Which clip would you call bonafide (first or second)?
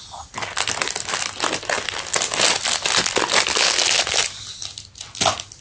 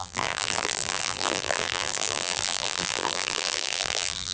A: first